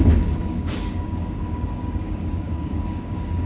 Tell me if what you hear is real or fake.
fake